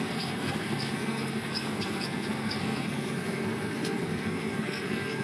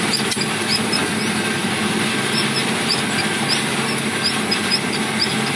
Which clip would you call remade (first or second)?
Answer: first